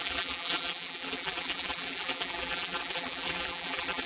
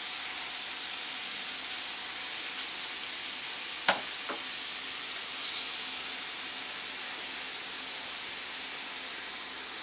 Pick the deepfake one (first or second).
first